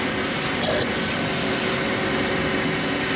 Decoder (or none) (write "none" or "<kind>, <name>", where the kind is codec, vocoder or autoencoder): none